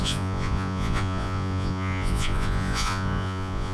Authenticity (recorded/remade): remade